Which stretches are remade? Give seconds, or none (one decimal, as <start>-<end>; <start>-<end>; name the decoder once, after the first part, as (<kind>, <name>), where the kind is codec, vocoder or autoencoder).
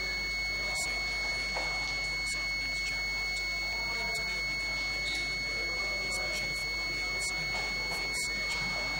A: none